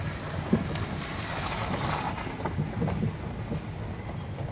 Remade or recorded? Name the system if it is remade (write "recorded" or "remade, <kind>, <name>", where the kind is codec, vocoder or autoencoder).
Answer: recorded